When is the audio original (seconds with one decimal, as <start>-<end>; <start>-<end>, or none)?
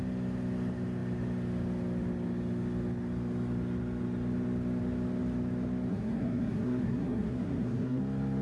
0.0-5.9; 8.0-8.4